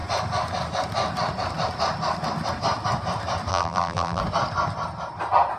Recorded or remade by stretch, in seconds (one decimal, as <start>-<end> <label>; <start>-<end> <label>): 0.0-3.5 recorded; 3.5-4.2 remade; 4.2-5.6 recorded